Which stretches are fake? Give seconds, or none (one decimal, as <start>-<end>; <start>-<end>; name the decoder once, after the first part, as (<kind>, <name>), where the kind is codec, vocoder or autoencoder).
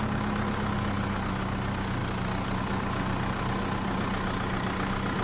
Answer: none